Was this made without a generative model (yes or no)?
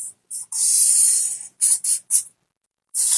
no